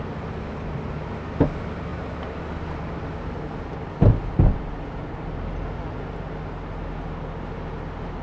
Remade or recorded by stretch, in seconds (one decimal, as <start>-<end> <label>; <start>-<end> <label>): 0.0-1.9 recorded; 1.9-2.4 remade; 2.4-8.2 recorded